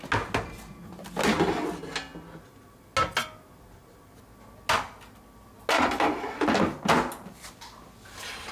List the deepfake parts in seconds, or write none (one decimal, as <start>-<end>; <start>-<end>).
none